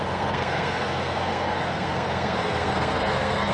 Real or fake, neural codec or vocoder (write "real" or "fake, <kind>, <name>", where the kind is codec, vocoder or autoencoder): fake, codec, SNAC